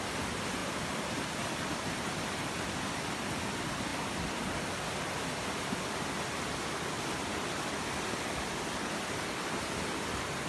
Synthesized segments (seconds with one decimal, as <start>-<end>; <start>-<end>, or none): none